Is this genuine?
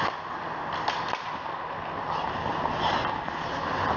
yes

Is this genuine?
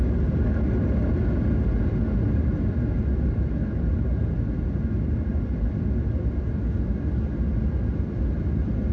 yes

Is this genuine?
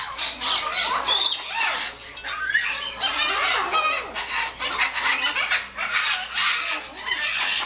yes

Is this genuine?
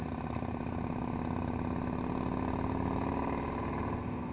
yes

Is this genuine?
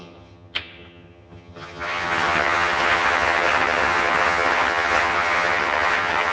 no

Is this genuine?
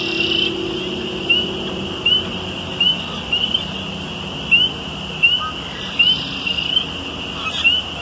yes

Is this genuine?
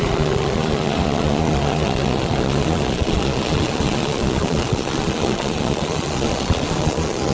no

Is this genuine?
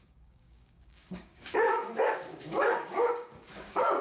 no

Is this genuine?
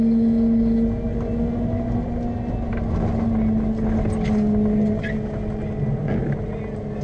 yes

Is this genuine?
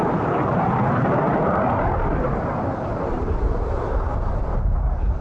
no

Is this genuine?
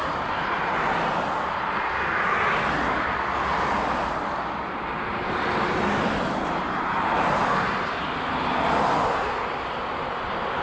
yes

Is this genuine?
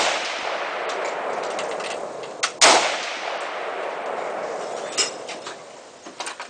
yes